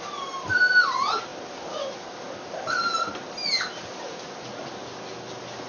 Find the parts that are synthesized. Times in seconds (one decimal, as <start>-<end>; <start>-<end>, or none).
none